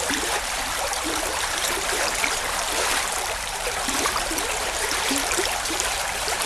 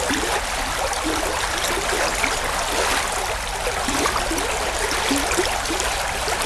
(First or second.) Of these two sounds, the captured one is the second